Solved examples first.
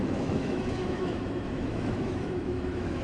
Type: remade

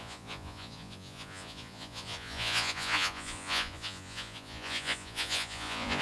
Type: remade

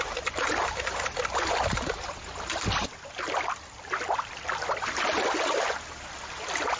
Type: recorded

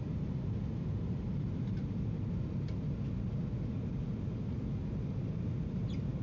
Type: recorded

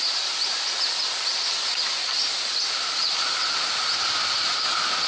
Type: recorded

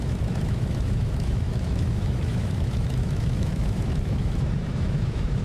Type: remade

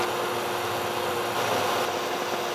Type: recorded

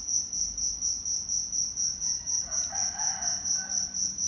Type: recorded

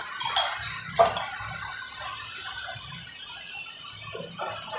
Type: recorded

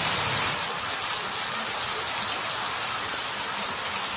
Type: recorded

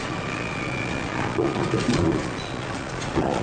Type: remade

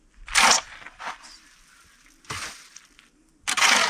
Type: recorded